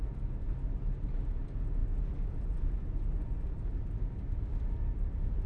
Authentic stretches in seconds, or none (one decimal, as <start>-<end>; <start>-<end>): 0.0-5.5